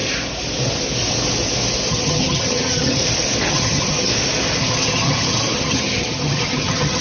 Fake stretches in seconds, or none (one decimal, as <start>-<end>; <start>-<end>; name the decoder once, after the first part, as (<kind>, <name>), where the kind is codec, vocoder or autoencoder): 1.9-3.0 (vocoder, HiFi-GAN); 3.5-4.1; 4.6-7.0